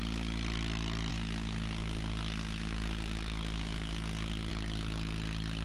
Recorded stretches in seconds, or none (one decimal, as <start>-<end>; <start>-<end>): 0.0-1.1; 4.5-5.6